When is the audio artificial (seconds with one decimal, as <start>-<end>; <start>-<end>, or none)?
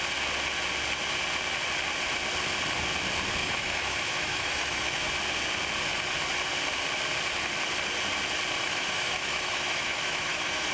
3.4-5.1; 8.6-10.7